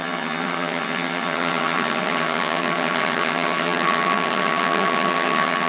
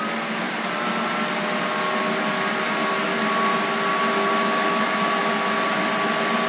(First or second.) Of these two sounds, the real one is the second